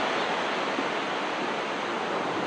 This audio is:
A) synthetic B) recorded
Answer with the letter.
B